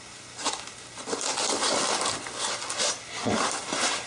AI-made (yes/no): no